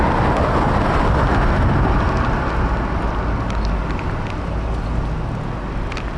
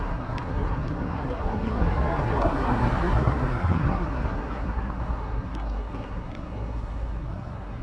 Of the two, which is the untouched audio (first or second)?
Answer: first